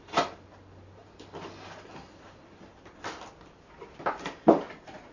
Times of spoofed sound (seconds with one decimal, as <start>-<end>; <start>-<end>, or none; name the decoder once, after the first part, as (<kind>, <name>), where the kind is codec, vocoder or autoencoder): none